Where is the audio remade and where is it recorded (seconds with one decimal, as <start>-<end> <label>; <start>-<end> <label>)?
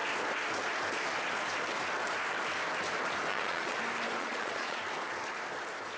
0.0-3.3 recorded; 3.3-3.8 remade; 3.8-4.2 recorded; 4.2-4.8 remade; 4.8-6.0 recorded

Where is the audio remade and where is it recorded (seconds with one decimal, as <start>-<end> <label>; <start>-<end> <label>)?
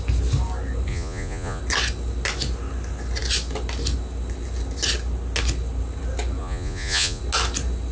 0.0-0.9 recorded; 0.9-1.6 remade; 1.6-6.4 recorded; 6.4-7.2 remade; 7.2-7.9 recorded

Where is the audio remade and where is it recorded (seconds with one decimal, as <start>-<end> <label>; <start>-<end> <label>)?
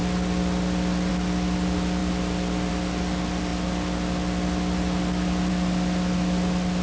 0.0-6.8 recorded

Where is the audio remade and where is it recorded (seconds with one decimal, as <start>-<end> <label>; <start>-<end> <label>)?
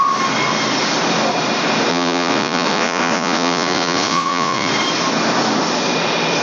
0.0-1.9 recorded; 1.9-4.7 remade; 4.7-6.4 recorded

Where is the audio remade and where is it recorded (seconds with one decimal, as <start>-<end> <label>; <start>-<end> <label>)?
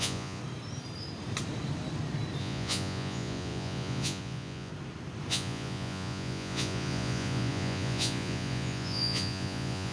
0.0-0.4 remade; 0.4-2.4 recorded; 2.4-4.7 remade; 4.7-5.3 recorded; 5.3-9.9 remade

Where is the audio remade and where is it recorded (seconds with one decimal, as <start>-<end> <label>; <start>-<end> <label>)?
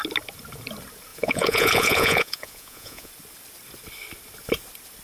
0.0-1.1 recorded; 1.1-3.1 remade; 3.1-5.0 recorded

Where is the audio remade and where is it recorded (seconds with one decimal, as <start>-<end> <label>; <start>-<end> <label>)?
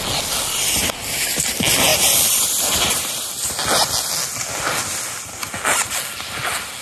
0.0-6.8 recorded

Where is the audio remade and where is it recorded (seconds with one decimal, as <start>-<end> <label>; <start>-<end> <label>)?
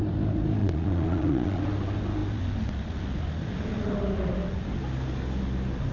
0.0-0.6 recorded; 0.6-1.6 remade; 1.6-5.9 recorded